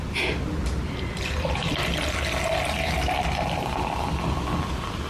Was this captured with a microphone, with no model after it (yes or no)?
yes